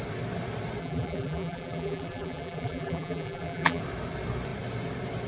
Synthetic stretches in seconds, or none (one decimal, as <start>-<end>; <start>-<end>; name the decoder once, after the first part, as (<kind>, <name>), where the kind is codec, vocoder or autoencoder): 0.8-3.8 (vocoder, BigVGAN v2)

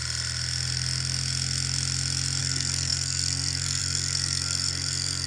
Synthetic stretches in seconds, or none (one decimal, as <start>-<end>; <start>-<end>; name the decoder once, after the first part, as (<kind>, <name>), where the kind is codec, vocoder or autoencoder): 2.4-5.3 (codec, SNAC)